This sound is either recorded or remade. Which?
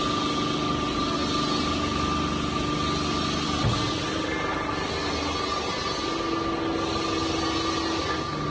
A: recorded